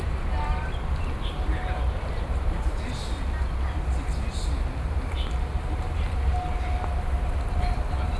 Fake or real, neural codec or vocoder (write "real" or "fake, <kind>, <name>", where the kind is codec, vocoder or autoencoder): real